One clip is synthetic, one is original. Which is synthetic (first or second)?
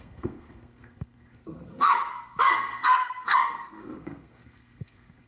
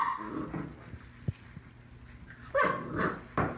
first